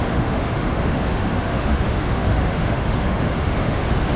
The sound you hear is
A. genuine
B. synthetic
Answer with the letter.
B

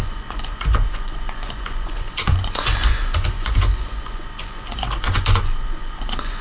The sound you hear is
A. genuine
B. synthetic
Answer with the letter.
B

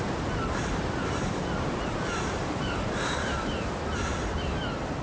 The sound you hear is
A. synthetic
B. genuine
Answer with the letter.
B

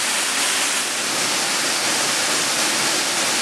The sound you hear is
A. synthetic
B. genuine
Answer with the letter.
B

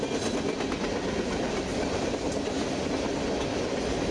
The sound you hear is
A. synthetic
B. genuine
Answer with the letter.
B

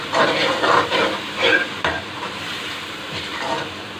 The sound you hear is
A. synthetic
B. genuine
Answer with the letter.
A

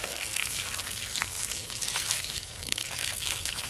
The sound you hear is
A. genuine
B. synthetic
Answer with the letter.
B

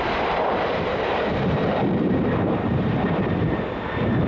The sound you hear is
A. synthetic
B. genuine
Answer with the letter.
A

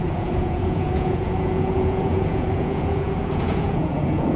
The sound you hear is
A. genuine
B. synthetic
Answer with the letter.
B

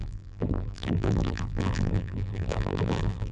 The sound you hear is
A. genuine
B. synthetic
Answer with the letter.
B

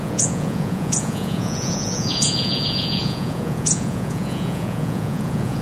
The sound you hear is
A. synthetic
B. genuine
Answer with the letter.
A